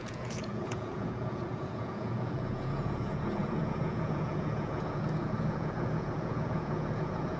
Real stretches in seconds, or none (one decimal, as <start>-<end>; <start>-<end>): none

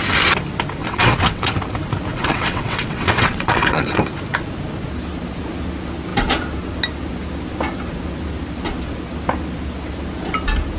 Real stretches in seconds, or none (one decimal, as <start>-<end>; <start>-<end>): 0.0-0.8; 1.5-2.1; 4.0-10.8